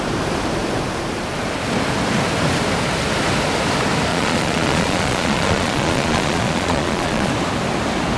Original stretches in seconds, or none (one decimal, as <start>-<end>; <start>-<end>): 0.0-4.1; 7.3-8.2